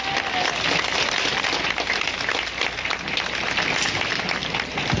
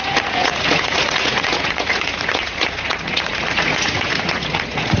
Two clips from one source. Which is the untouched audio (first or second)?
first